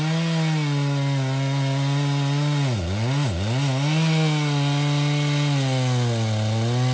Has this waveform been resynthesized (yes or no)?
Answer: no